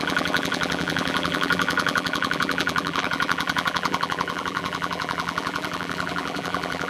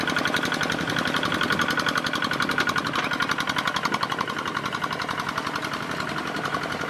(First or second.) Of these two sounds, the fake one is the first